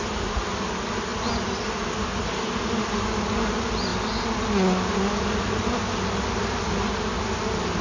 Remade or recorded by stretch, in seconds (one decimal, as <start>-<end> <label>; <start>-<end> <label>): 0.0-7.8 recorded